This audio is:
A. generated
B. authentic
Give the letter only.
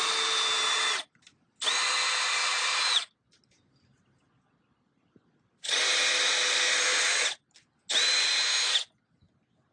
B